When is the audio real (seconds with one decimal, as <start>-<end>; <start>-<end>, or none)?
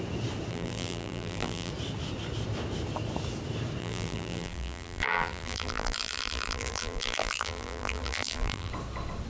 0.0-0.5; 1.7-3.8; 8.7-9.3